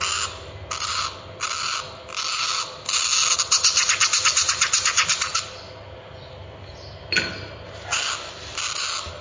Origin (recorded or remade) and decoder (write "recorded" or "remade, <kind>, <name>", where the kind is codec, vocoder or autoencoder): recorded